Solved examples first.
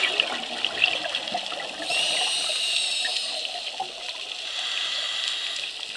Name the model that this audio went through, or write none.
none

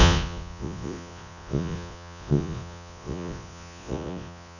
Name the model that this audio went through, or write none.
vocoder, Vocos